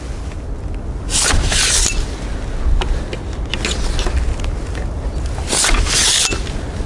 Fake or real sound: real